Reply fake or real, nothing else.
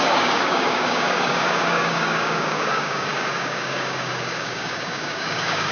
fake